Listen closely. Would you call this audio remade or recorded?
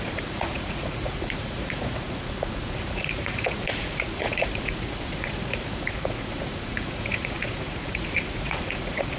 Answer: remade